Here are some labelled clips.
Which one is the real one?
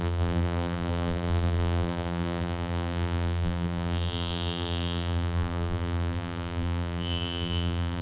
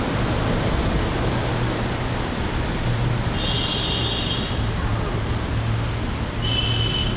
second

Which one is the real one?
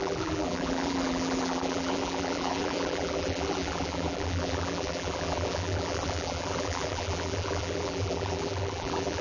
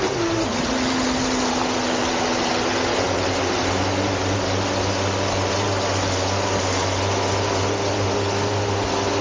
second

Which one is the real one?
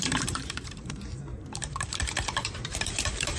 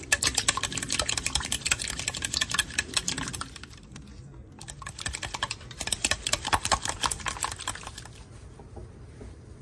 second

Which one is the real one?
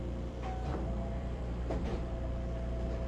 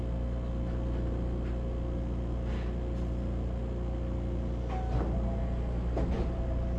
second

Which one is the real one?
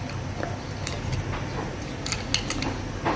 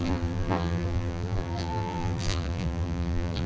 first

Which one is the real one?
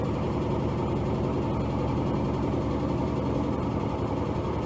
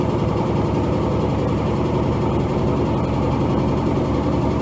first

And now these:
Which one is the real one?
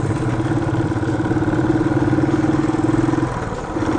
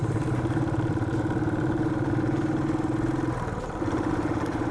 first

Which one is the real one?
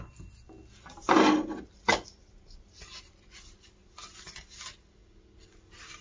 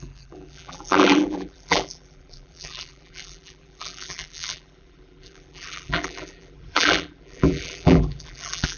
first